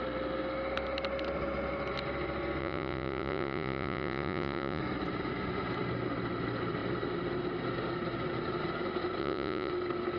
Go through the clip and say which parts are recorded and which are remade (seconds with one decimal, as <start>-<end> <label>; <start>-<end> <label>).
0.0-2.6 recorded; 2.6-4.8 remade; 4.8-9.2 recorded; 9.2-9.7 remade; 9.7-10.2 recorded